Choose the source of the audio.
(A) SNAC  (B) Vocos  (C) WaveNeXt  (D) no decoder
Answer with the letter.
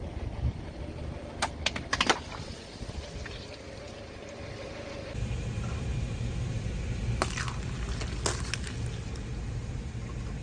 D